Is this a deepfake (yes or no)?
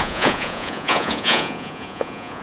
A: yes